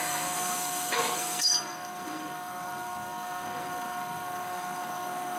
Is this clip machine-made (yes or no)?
yes